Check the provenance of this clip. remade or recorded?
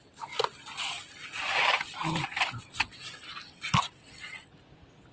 recorded